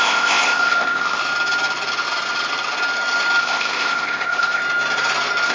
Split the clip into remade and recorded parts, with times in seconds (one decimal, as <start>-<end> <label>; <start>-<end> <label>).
0.0-1.2 remade; 1.2-3.4 recorded; 3.4-4.6 remade; 4.6-5.5 recorded